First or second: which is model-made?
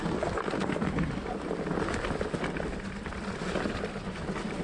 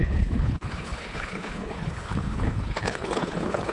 second